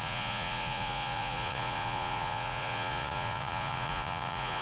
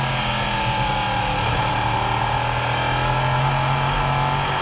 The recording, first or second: second